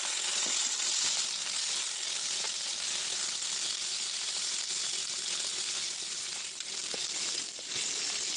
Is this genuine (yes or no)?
yes